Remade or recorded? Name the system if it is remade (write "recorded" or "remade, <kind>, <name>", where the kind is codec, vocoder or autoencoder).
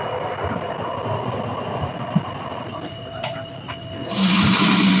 recorded